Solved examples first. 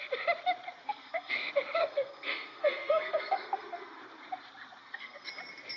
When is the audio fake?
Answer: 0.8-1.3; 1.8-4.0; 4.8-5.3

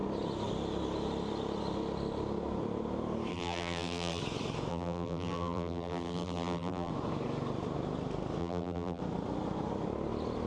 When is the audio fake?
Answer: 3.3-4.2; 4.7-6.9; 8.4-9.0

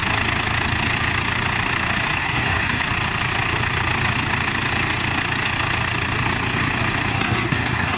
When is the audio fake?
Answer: 2.2-2.8; 7.1-8.0

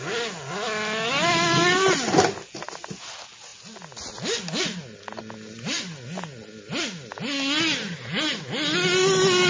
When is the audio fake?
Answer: none